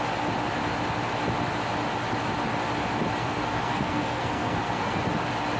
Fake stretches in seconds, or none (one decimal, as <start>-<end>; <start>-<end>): 3.2-5.0